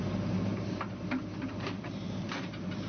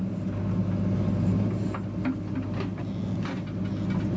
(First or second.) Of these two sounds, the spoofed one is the first